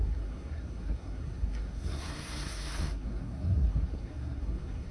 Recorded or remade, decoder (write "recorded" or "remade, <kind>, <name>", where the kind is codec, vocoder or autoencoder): remade, codec, SNAC